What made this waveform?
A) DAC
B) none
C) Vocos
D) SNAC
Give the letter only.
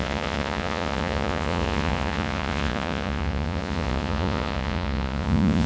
C